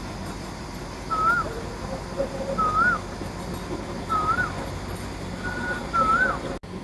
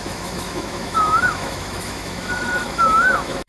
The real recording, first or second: first